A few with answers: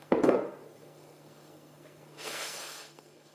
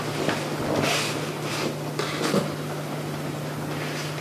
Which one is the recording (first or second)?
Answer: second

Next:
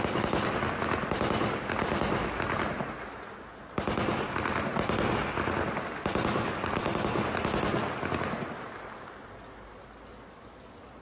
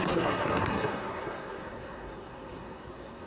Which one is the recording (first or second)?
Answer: first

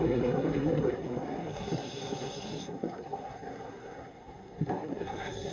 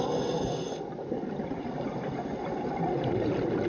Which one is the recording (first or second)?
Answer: second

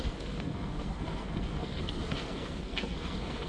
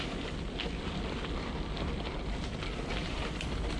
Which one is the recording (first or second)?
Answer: second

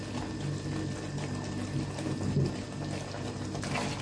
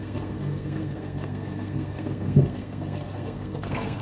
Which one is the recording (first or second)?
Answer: first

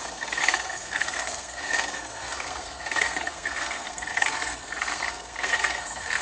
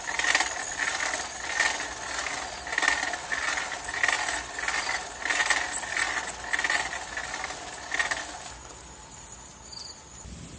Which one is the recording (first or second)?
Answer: second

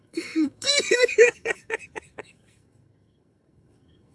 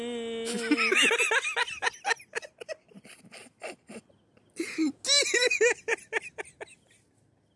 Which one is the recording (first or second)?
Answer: second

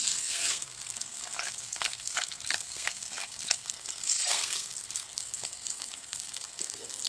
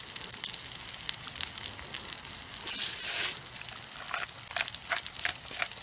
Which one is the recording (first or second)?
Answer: second